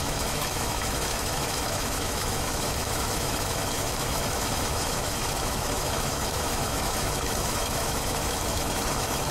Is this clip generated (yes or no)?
yes